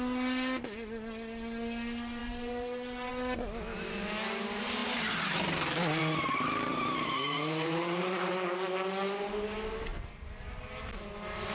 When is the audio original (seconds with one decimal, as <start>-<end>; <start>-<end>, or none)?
0.0-2.2; 3.1-6.7; 8.3-9.9; 10.9-11.5